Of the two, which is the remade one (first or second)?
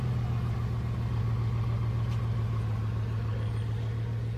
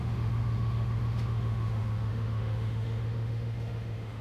second